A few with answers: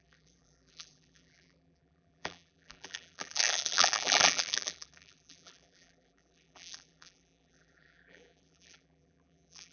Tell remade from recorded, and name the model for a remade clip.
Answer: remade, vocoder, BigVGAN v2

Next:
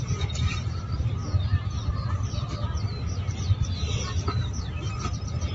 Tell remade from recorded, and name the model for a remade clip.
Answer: recorded